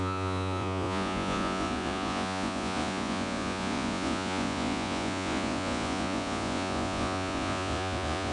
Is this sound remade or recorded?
remade